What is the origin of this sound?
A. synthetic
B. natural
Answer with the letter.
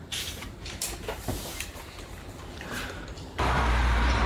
A